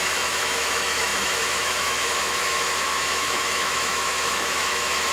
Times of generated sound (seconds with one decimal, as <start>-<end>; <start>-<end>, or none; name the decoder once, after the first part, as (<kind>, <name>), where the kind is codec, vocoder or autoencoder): 0.0-5.1 (autoencoder, DAC-VAE)